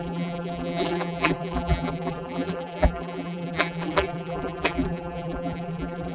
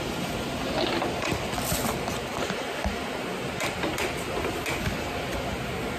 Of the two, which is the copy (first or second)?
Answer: first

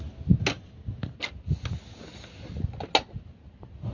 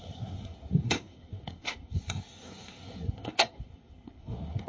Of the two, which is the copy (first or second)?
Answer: second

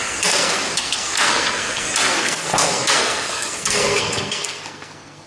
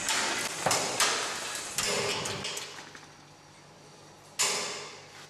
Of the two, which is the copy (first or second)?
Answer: first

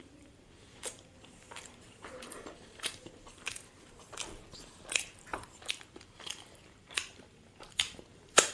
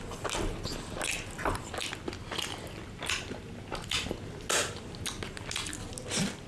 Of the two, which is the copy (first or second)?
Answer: first